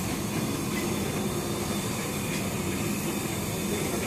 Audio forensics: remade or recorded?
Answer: recorded